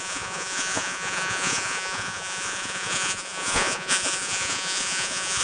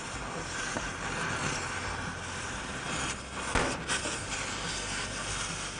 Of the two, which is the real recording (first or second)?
second